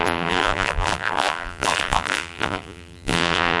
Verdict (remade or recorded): remade